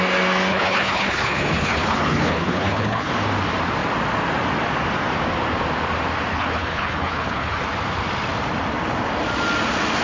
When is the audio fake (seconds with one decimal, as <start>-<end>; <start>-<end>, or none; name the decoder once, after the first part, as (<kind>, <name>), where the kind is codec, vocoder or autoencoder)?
0.5-3.1 (codec, HILCodec); 6.3-7.6